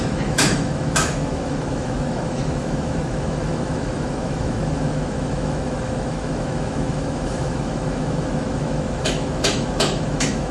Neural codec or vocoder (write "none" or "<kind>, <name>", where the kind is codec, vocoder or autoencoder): autoencoder, DAC-VAE